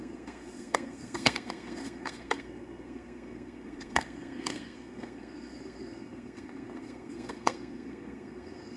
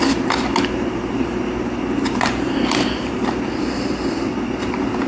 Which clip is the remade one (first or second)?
first